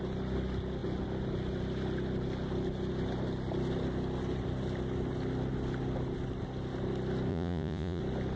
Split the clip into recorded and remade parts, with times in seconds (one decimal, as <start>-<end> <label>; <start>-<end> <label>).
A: 0.0-7.3 recorded; 7.3-8.0 remade; 8.0-8.4 recorded